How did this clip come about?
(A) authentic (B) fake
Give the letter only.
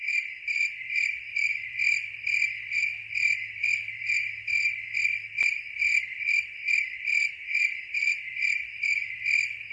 B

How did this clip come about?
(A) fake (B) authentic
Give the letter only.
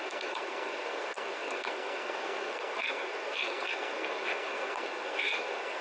A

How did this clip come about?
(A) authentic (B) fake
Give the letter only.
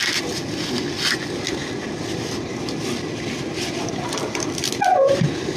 A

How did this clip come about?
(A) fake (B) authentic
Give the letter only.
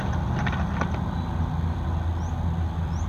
B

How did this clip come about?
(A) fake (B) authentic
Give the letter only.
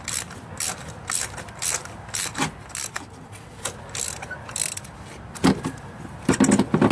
B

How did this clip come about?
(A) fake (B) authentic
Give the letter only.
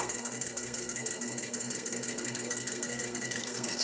A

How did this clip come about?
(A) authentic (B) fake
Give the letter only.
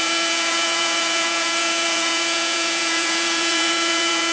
B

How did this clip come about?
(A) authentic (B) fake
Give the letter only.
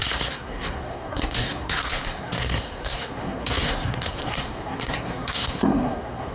B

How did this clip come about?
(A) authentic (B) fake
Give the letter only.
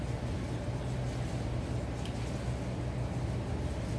A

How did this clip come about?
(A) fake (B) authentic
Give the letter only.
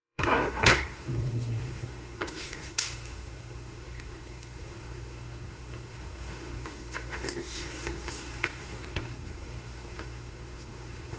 A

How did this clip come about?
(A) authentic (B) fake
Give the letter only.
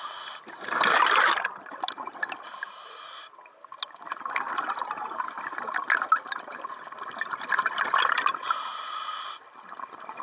A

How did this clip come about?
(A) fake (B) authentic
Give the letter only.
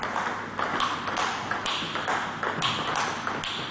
B